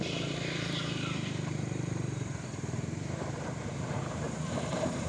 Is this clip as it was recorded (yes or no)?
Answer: no